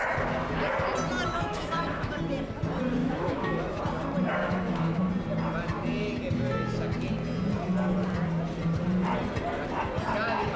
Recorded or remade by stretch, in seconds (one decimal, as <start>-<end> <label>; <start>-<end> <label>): 0.0-1.3 recorded; 1.3-2.2 remade; 2.2-3.0 recorded; 3.0-3.8 remade; 3.8-4.4 recorded; 4.4-5.1 remade; 5.1-10.6 recorded